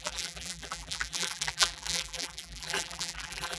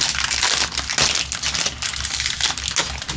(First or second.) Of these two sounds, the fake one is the first